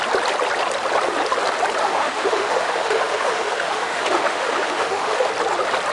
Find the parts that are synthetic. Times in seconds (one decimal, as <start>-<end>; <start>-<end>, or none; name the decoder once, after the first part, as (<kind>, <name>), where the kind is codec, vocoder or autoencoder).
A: 1.8-5.3 (autoencoder, DAC-VAE)